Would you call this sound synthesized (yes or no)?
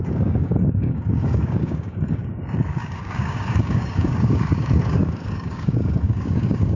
yes